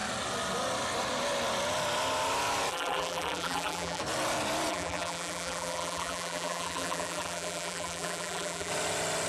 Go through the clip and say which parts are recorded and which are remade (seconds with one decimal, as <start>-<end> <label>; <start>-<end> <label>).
0.0-2.7 recorded; 2.7-4.0 remade; 4.0-4.7 recorded; 4.7-8.7 remade; 8.7-9.3 recorded